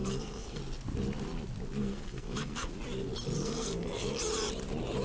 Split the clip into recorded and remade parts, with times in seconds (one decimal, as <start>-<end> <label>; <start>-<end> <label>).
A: 0.0-0.6 remade; 0.6-1.8 recorded; 1.8-2.7 remade; 2.7-3.4 recorded; 3.4-4.2 remade; 4.2-5.0 recorded